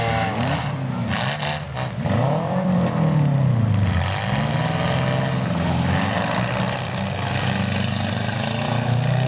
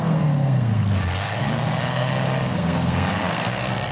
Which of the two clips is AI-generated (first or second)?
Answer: second